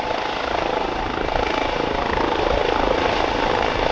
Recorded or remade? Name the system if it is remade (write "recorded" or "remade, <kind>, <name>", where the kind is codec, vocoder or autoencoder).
recorded